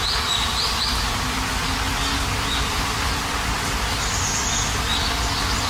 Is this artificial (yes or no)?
no